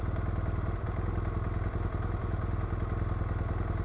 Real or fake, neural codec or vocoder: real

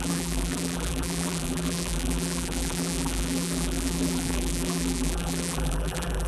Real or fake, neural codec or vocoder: fake, vocoder, BigVGAN v2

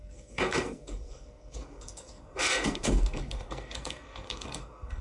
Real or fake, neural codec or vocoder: fake, codec, SNAC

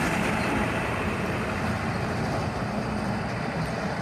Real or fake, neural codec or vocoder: fake, vocoder, BigVGAN v2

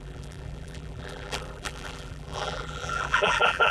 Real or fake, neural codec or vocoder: fake, vocoder, BigVGAN v2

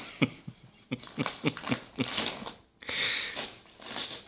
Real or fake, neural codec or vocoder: real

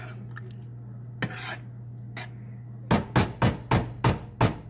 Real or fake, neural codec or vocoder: real